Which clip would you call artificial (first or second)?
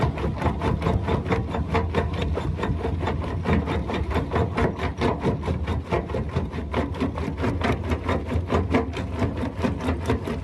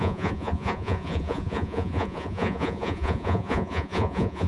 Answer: second